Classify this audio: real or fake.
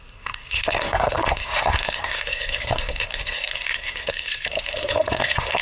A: fake